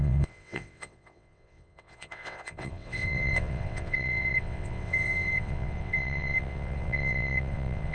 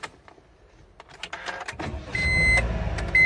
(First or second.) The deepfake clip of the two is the first